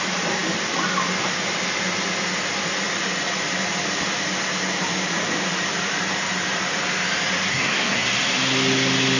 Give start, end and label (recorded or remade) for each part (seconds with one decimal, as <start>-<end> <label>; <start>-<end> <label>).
0.0-7.5 recorded; 7.5-8.1 remade; 8.1-9.2 recorded